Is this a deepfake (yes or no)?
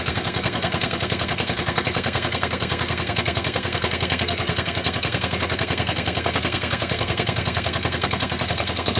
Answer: yes